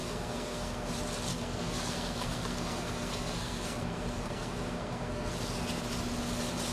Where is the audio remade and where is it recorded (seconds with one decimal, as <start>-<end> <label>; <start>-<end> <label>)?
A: 0.0-0.9 remade; 0.9-1.3 recorded; 1.3-5.3 remade; 5.3-6.7 recorded